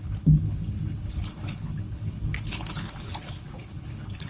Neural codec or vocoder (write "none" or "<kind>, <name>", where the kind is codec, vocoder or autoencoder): codec, HILCodec